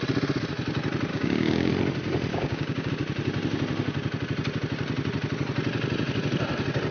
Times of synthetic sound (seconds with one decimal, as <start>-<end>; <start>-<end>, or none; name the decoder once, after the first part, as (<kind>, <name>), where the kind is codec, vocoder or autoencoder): 1.1-1.7 (codec, DAC); 2.3-2.9